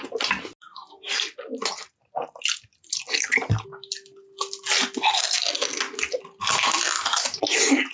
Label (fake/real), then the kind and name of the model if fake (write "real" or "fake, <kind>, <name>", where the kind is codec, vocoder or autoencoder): real